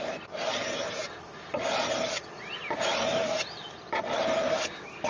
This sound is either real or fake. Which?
real